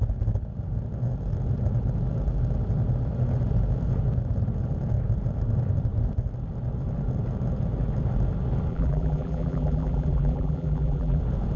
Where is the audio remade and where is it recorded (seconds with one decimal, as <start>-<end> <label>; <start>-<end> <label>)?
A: 0.0-8.7 recorded; 8.7-11.2 remade; 11.2-11.6 recorded